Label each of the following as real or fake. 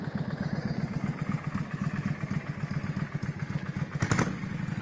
real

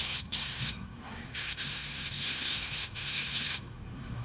fake